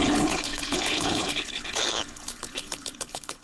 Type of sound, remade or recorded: remade